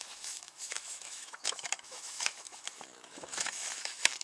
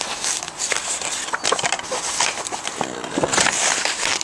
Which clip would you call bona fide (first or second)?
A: second